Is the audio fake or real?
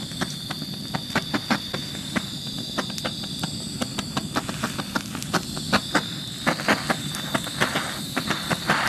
real